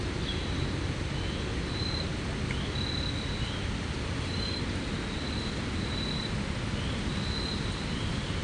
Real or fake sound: real